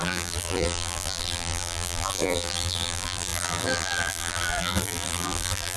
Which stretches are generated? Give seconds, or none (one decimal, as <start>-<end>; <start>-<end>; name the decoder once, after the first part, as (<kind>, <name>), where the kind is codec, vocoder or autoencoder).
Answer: 0.0-5.8 (vocoder, BigVGAN v2)